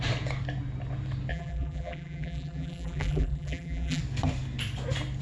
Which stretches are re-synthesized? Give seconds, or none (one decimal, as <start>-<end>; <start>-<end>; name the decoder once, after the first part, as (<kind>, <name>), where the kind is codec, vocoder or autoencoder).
1.3-4.0 (vocoder, BigVGAN v2)